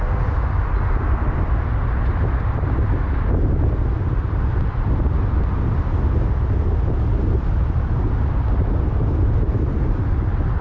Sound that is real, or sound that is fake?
real